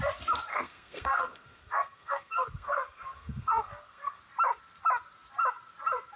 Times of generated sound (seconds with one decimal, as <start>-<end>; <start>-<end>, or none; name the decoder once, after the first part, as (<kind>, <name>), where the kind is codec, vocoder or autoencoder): 0.5-4.2 (codec, SNAC)